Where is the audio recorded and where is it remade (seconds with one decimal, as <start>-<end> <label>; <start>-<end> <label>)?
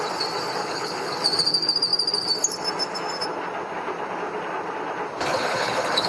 0.0-0.6 recorded; 0.6-1.1 remade; 1.1-5.3 recorded; 5.3-6.1 remade